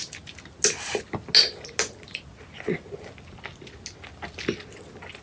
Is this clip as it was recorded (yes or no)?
yes